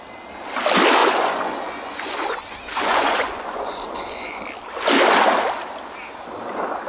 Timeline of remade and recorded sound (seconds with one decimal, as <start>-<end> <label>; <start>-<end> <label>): 0.0-1.0 recorded; 1.0-4.4 remade; 4.4-6.9 recorded